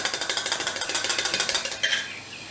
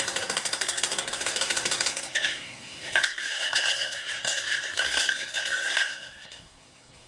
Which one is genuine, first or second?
first